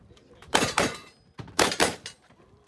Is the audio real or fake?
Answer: fake